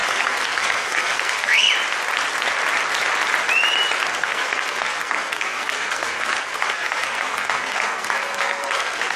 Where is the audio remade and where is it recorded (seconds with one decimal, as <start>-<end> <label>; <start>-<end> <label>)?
0.0-1.7 remade; 1.7-4.1 recorded; 4.1-9.2 remade